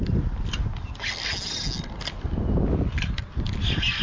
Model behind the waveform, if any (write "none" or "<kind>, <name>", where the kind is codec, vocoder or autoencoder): none